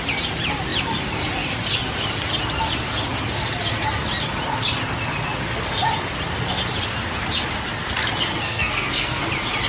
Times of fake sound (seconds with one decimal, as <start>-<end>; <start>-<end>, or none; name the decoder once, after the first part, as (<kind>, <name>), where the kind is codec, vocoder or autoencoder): 8.3-9.2 (codec, SNAC)